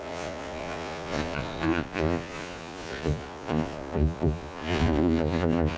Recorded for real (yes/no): no